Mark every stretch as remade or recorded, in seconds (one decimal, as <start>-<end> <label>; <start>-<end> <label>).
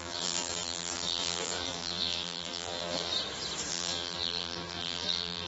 0.0-3.1 remade; 3.1-3.7 recorded; 3.7-5.5 remade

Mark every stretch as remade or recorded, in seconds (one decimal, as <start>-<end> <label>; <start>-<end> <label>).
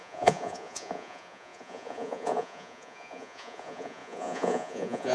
0.0-5.1 remade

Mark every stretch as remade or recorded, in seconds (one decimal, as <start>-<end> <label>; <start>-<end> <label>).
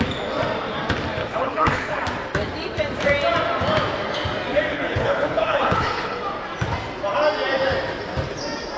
0.0-1.2 recorded; 1.2-2.0 remade; 2.0-4.7 recorded; 4.7-6.2 remade; 6.2-8.8 recorded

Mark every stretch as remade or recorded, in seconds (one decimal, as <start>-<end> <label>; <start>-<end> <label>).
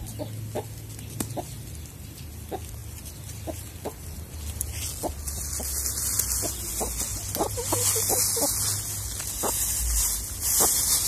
0.0-7.1 recorded; 7.1-7.8 remade; 7.8-11.1 recorded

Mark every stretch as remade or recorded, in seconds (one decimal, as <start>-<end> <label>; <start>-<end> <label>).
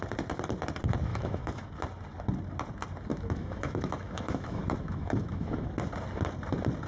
0.0-1.1 recorded; 1.1-1.7 remade; 1.7-3.1 recorded; 3.1-5.7 remade; 5.7-6.9 recorded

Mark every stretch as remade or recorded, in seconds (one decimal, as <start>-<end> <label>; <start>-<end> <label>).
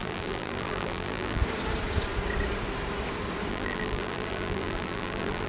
0.0-1.4 remade; 1.4-3.5 recorded; 3.5-5.5 remade